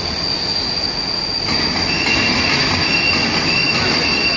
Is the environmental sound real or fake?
real